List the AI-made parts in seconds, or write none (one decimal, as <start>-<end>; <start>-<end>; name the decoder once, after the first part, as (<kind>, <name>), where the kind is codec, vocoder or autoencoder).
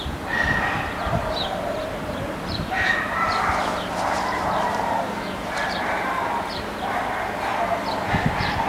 1.8-7.0 (vocoder, BigVGAN v2)